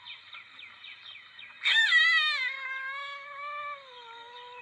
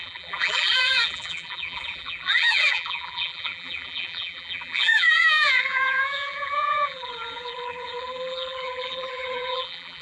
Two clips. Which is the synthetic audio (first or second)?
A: second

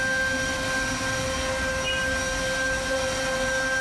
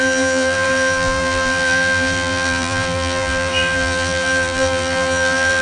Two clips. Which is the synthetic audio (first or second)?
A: second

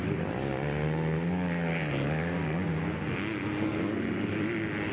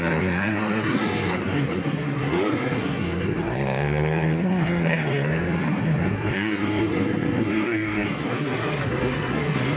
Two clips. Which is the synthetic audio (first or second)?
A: second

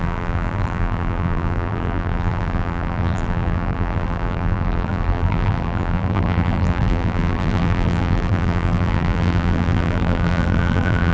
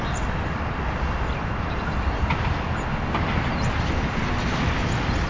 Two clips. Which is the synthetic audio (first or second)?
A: first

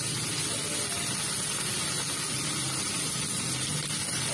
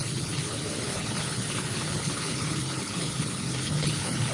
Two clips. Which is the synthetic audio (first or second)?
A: second